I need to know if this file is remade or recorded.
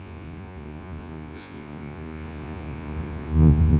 remade